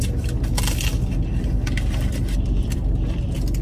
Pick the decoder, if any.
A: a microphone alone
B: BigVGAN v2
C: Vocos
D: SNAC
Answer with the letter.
A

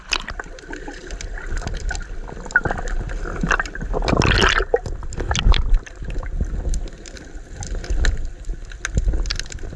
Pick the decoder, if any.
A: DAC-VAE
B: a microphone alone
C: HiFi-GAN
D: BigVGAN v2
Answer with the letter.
B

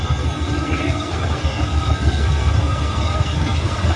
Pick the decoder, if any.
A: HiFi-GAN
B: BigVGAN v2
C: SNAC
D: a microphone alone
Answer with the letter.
C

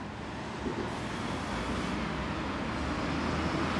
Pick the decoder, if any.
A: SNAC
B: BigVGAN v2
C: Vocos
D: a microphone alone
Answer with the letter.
D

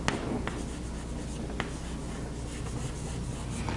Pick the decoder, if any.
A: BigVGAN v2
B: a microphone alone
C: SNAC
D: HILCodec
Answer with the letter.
B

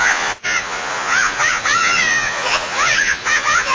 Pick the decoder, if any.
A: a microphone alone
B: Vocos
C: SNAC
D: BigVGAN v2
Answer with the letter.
B